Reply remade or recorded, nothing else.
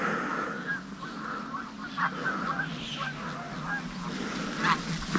recorded